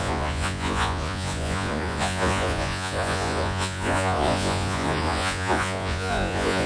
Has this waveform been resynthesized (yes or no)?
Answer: yes